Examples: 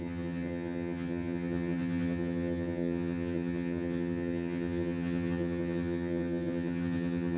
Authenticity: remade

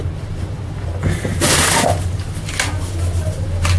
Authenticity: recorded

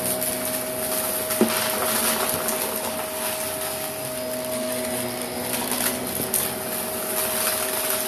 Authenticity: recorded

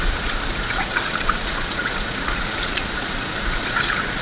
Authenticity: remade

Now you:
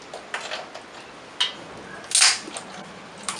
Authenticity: recorded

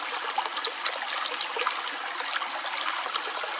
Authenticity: recorded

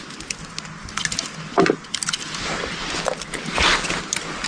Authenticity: recorded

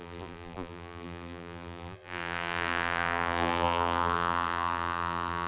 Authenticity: remade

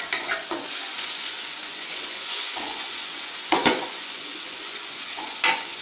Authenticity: remade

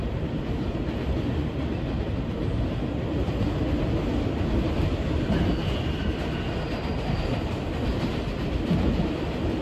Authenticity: recorded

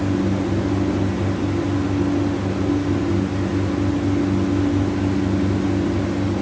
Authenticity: recorded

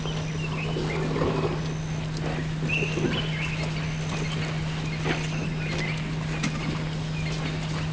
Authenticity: recorded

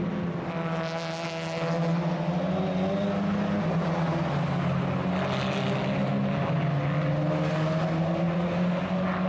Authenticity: recorded